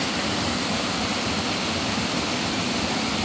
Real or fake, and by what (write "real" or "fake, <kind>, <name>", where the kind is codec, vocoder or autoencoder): real